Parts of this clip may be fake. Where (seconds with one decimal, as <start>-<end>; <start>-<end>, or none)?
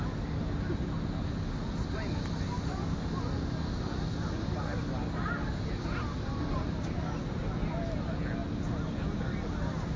none